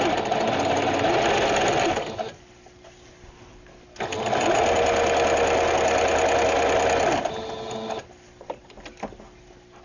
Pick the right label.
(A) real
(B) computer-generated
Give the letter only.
A